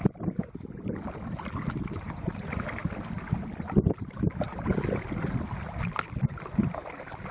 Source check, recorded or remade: recorded